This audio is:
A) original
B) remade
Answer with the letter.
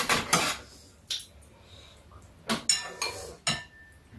A